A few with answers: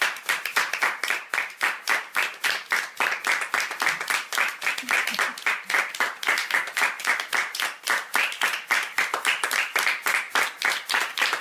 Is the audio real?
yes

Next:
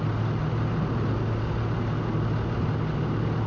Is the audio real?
yes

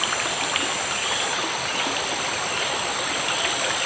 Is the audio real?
yes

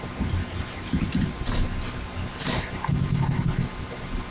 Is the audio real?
yes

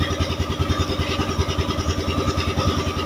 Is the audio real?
no